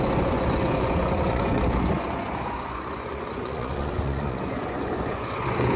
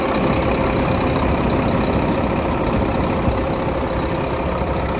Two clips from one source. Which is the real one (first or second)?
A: second